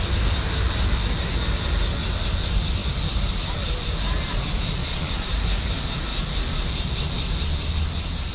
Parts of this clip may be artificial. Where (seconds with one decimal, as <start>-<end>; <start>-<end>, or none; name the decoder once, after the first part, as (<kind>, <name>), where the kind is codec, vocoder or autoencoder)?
4.8-5.3 (vocoder, Vocos)